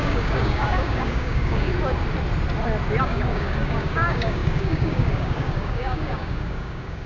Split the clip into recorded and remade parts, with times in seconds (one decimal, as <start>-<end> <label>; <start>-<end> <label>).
0.0-1.7 remade; 1.7-3.0 recorded; 3.0-7.1 remade